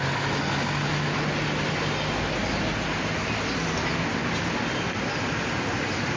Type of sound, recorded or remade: recorded